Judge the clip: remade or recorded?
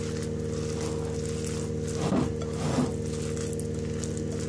recorded